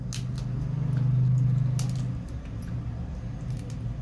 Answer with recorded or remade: recorded